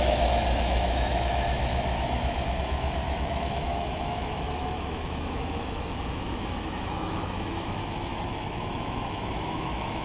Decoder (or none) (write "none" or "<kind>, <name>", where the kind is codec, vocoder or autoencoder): autoencoder, DAC-VAE